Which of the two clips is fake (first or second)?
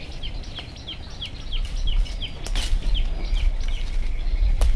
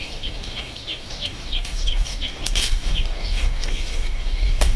second